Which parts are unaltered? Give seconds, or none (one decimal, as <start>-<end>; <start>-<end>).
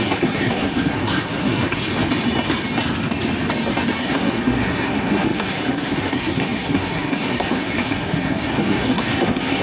1.8-4.0